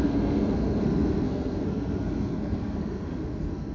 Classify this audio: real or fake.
fake